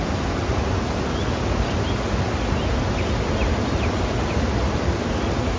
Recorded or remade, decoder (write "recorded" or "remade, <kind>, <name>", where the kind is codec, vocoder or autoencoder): recorded